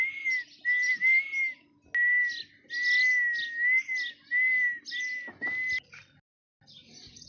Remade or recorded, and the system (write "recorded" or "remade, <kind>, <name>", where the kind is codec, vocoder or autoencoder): recorded